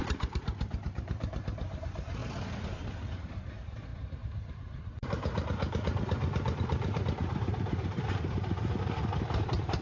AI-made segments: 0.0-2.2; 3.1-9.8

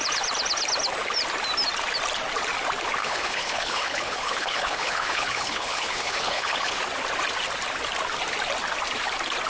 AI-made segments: 3.0-6.8

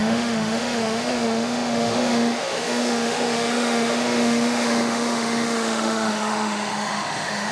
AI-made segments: 0.0-7.5

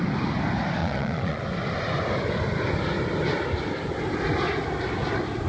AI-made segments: 0.8-1.4

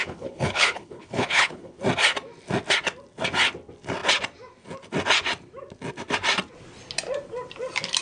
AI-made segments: 0.0-1.8